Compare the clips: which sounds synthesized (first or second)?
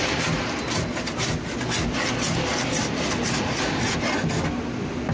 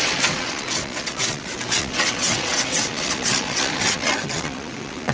second